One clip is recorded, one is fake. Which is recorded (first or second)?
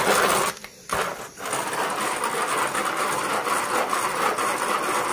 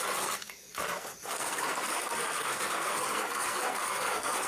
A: first